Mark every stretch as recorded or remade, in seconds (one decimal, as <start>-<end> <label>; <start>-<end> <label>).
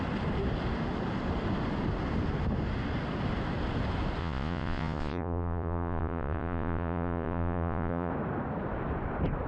0.0-4.2 recorded; 4.2-8.1 remade; 8.1-9.5 recorded